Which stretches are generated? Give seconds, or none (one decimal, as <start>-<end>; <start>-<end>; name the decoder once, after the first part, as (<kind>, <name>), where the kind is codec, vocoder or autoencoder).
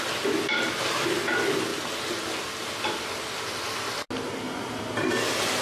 none